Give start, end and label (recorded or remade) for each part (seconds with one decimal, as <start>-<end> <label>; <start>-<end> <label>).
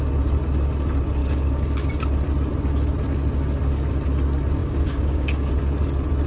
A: 0.0-1.2 recorded; 1.2-1.9 remade; 1.9-4.6 recorded; 4.6-5.5 remade; 5.5-6.3 recorded